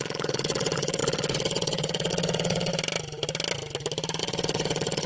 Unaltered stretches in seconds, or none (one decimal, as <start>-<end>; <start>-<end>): 2.7-4.2